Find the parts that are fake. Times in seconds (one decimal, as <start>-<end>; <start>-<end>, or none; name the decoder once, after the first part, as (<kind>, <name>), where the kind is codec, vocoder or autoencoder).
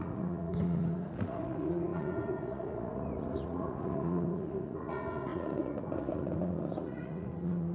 0.0-7.7 (vocoder, Vocos)